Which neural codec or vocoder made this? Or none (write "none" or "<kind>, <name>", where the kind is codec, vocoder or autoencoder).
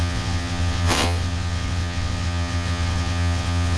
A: vocoder, WaveNeXt